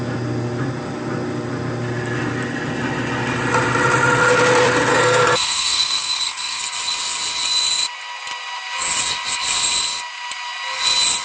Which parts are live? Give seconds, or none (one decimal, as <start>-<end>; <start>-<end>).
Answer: 0.0-4.9; 6.6-11.2